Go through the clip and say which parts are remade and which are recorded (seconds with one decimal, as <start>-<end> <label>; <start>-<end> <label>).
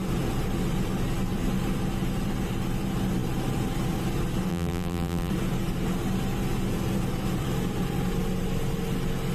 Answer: 0.0-4.5 recorded; 4.5-5.3 remade; 5.3-9.3 recorded